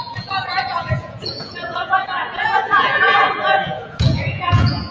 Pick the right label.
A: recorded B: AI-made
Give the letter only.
B